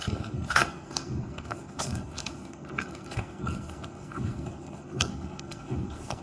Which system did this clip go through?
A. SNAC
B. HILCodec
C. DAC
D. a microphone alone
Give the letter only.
A